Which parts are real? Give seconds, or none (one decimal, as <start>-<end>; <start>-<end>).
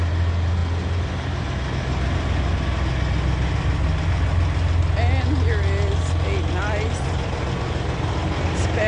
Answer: 0.0-8.9